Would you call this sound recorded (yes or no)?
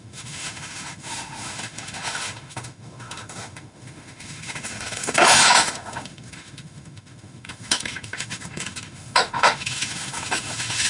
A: no